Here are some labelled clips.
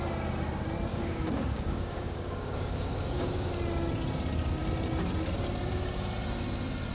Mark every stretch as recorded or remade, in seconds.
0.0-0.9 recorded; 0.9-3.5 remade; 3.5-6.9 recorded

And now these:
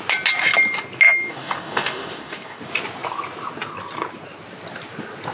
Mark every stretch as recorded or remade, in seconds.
0.0-1.3 recorded; 1.3-2.6 remade; 2.6-5.3 recorded